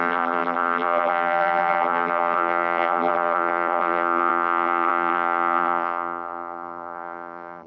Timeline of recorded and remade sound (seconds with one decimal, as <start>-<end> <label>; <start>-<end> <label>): 0.0-7.7 remade